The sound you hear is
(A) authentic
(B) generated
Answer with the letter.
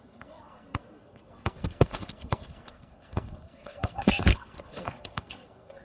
B